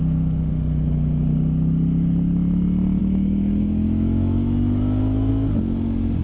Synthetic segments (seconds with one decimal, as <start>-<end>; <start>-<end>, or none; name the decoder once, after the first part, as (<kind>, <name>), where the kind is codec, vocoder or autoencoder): 3.0-5.3 (autoencoder, DAC-VAE)

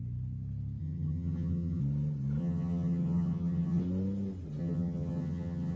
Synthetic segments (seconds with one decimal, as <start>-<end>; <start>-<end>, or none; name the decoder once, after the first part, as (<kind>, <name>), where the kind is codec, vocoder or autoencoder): 0.8-1.8 (vocoder, HiFi-GAN); 2.4-3.8; 4.6-5.8

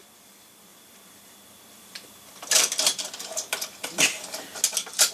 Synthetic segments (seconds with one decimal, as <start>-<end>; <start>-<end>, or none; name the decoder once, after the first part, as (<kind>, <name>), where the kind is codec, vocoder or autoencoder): 0.7-3.1 (vocoder, BigVGAN v2)

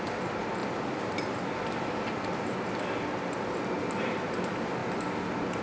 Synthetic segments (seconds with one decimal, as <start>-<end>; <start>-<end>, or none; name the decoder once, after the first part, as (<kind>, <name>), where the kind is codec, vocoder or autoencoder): none